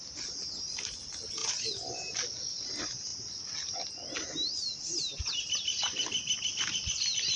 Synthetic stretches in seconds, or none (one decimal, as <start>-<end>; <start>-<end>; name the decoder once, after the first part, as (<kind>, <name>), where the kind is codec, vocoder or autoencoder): none